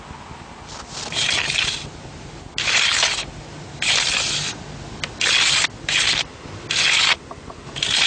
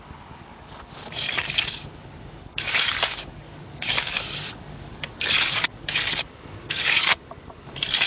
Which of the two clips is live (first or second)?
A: first